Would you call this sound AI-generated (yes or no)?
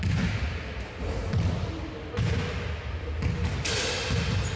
no